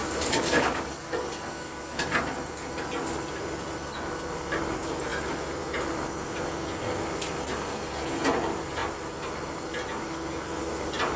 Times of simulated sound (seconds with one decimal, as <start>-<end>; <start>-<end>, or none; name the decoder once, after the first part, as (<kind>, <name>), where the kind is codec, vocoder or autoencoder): 0.0-2.0 (codec, DAC)